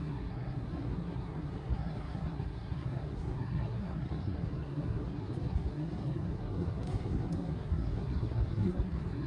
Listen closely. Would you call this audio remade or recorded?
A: remade